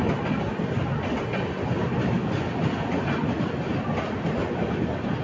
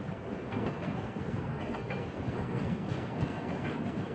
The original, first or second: first